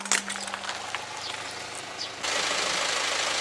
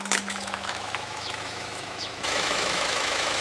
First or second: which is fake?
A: second